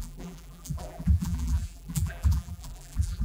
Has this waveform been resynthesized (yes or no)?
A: yes